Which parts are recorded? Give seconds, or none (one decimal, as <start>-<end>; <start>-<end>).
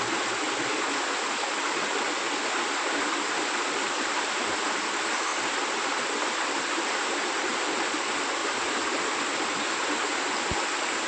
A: 0.0-8.4; 9.2-11.1